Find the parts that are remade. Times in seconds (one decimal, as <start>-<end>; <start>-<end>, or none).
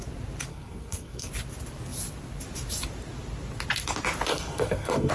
0.5-1.3; 4.3-5.1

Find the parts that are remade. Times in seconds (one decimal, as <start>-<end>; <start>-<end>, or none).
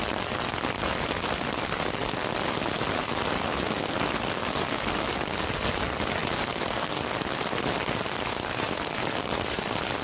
none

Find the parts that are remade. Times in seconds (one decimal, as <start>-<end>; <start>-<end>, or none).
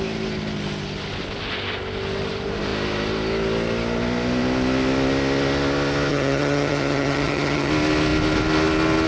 6.1-7.7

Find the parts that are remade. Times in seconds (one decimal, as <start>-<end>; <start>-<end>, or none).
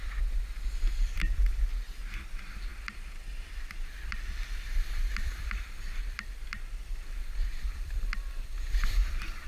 0.7-1.7; 2.3-9.5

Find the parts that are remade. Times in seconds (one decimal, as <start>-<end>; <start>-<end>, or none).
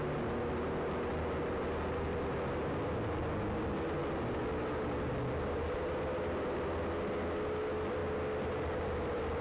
none